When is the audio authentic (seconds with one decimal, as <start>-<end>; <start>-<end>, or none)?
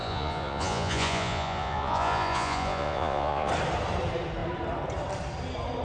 3.5-5.8